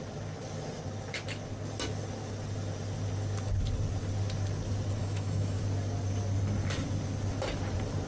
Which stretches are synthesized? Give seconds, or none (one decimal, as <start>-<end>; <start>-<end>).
5.0-5.6